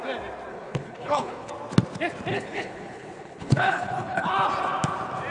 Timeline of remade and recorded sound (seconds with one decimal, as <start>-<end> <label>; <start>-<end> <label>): 0.0-0.5 recorded; 0.5-1.5 remade; 1.5-2.3 recorded; 2.3-4.3 remade; 4.3-5.3 recorded

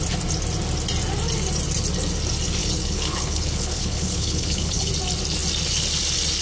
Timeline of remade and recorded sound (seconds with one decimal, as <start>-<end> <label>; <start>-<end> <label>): 0.0-2.6 recorded; 2.6-4.9 remade; 4.9-6.4 recorded

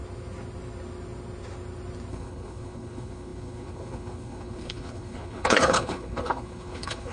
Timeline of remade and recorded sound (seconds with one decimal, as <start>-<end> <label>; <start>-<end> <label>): 0.0-2.1 recorded; 2.1-7.1 remade

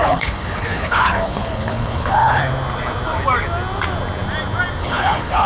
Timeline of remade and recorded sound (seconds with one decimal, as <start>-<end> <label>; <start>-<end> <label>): 0.0-2.4 remade; 2.4-4.8 recorded; 4.8-5.5 remade

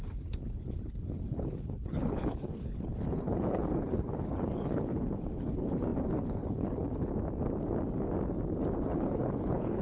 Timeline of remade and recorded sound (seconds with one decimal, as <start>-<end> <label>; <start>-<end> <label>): 0.0-7.1 remade; 7.1-8.8 recorded; 8.8-9.8 remade

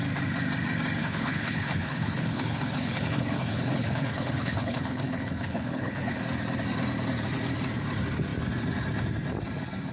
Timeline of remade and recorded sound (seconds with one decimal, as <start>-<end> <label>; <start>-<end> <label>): 0.0-1.0 recorded; 1.0-6.2 remade; 6.2-9.9 recorded

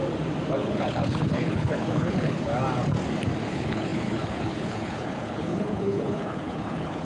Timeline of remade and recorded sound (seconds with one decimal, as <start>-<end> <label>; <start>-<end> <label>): 0.0-0.5 recorded; 0.5-2.5 remade; 2.5-3.5 recorded; 3.5-7.0 remade